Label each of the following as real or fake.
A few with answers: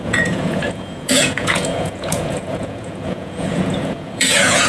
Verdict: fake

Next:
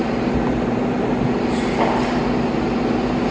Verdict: real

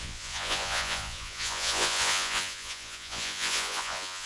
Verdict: fake